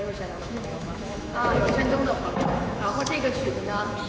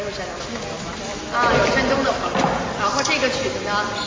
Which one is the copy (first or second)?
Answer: first